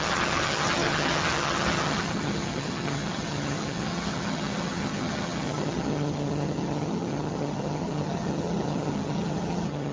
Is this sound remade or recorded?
remade